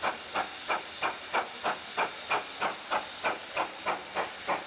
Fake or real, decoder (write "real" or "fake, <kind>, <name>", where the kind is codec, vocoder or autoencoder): real